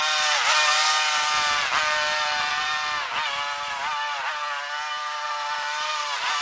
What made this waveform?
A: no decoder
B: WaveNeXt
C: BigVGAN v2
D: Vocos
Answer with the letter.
A